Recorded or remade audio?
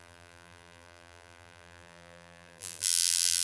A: remade